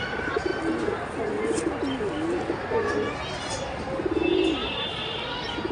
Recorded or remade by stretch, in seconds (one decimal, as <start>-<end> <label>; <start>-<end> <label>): 0.0-4.6 recorded; 4.6-5.7 remade